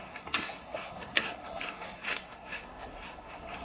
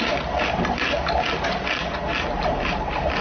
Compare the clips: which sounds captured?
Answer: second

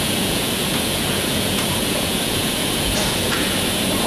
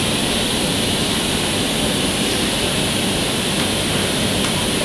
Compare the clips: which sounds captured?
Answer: second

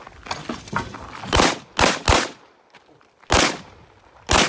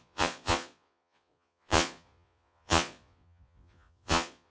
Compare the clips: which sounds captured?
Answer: first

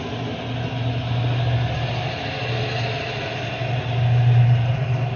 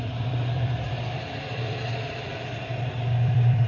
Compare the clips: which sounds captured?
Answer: first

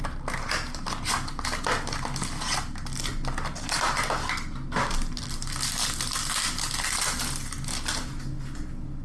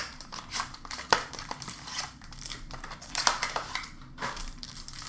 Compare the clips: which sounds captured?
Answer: first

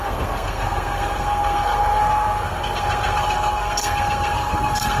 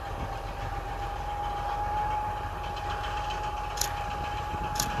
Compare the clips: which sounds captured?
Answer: second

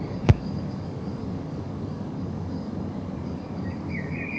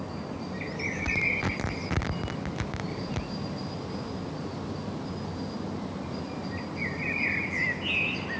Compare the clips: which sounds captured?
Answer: second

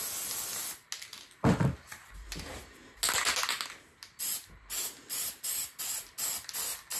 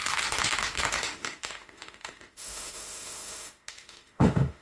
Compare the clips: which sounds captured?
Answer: first